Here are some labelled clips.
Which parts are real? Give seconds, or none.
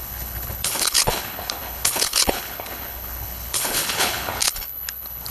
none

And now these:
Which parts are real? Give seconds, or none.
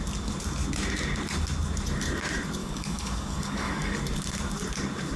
0.0-2.6; 4.0-5.2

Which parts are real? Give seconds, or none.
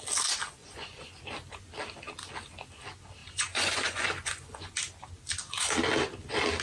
0.0-0.6; 1.2-3.2; 4.7-6.6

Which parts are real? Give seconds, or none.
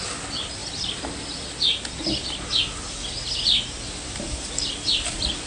0.0-5.5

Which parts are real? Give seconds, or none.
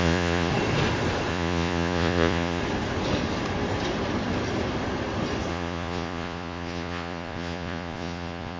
0.5-1.3; 2.6-5.5